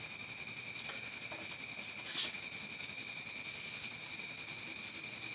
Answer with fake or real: real